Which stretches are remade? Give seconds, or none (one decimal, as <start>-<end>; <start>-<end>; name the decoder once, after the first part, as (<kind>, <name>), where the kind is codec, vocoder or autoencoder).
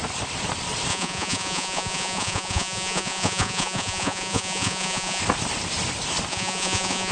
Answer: 0.9-5.2 (vocoder, Vocos); 6.3-7.1